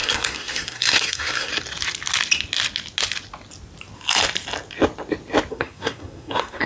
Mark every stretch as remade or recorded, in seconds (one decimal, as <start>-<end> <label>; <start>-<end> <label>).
0.0-1.5 remade; 1.5-5.5 recorded; 5.5-6.7 remade